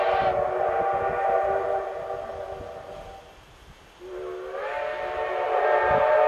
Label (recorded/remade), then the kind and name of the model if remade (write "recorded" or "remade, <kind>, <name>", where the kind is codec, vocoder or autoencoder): recorded